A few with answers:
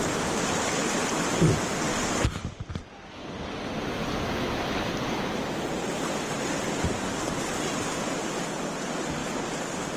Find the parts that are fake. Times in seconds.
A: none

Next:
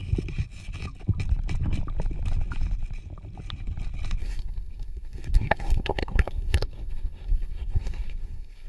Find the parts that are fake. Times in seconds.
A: 4.2-8.7 (codec, SNAC)

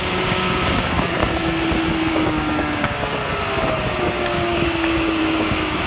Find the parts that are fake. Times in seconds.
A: 0.0-1.2 (codec, DAC); 2.1-3.2; 4.0-5.9